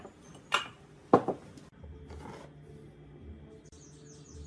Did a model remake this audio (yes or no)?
no